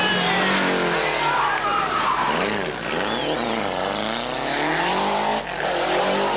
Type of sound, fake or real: real